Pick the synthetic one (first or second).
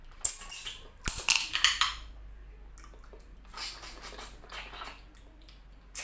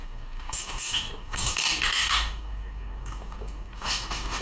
second